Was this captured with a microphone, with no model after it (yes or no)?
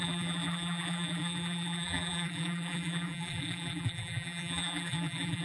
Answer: no